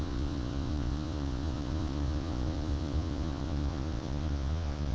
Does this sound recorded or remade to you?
remade